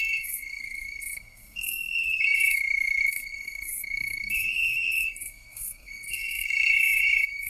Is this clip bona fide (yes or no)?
no